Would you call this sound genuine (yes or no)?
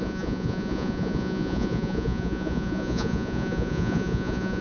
no